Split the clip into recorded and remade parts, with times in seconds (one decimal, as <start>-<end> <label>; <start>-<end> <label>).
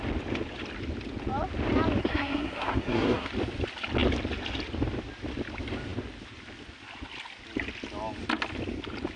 0.0-2.0 recorded; 2.0-3.3 remade; 3.3-9.2 recorded